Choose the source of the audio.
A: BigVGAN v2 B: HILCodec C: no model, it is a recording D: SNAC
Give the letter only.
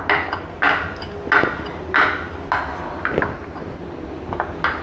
C